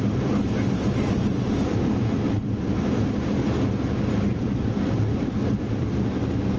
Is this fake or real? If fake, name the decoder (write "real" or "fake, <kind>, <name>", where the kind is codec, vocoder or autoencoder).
real